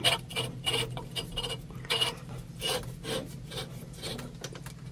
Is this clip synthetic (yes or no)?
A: no